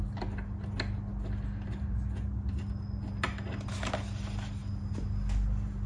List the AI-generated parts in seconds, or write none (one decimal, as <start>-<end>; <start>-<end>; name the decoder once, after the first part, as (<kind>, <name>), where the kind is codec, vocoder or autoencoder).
none